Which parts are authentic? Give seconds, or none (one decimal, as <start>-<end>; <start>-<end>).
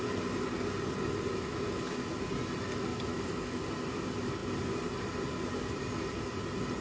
0.0-1.3; 1.9-2.9; 3.6-6.8